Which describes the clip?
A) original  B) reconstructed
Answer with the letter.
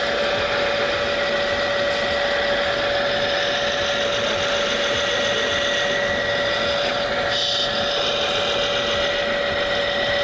A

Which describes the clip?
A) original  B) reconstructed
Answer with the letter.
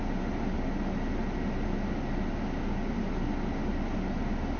A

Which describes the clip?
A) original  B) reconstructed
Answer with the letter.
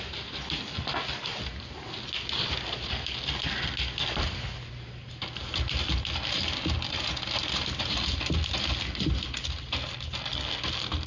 A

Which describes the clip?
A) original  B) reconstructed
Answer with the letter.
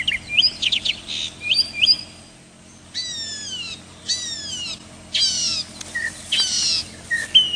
A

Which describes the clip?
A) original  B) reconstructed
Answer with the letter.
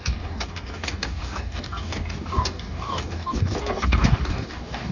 B